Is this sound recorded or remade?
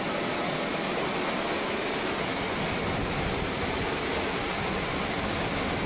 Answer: recorded